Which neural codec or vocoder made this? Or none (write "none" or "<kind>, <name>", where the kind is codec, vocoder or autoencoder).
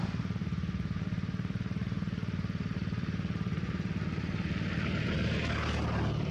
none